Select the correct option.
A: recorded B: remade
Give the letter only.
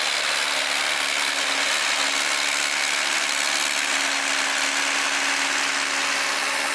A